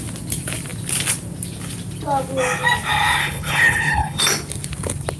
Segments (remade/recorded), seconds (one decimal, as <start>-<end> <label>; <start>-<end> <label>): 0.0-3.2 recorded; 3.2-4.2 remade; 4.2-5.2 recorded